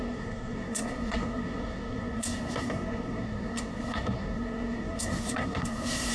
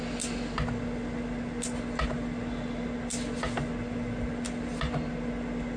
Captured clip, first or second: second